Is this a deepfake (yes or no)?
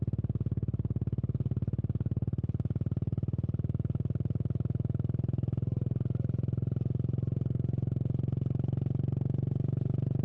no